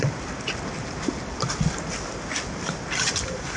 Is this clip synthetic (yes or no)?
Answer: no